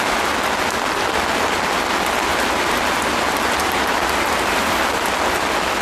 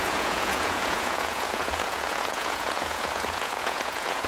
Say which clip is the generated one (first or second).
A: second